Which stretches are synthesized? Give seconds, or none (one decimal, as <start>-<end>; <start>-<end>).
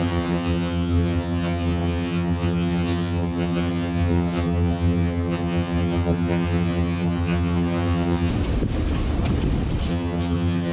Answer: 0.0-8.3; 9.9-10.7